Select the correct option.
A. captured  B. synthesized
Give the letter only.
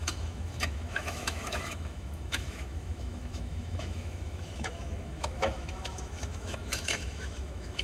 B